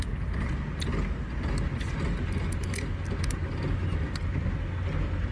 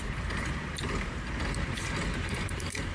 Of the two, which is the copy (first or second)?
second